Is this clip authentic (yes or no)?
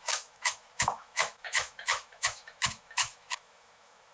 no